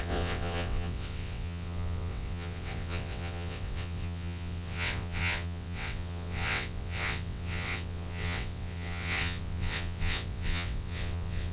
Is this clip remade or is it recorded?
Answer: remade